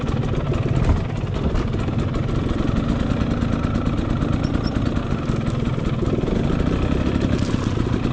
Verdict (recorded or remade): recorded